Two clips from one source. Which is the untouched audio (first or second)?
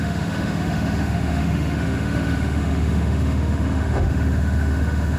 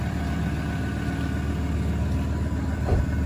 second